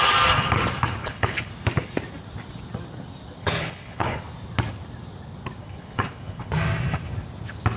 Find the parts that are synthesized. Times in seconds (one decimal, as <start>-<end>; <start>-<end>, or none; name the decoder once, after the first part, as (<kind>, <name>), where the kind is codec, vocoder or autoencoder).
1.0-1.5 (codec, HILCodec); 3.4-4.2; 5.6-6.5